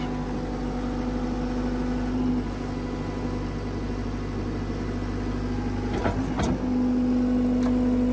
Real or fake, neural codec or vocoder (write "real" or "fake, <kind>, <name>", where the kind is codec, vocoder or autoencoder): real